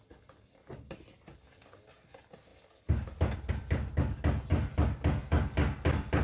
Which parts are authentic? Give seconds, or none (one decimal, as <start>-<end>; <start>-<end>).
0.0-6.2